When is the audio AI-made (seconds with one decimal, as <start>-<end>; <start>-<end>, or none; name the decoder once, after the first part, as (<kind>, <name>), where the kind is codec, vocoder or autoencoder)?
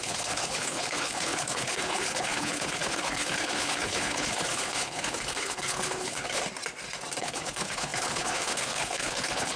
0.0-6.4 (codec, HILCodec); 7.2-9.6